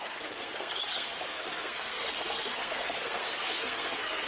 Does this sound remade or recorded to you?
remade